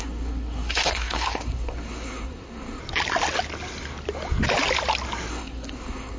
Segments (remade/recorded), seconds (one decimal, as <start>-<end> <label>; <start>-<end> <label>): 0.0-2.8 remade; 2.8-5.3 recorded; 5.3-6.2 remade